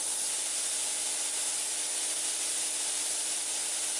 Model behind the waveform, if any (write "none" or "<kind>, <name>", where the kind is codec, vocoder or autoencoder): none